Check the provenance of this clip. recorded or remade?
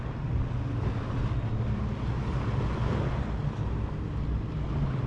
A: recorded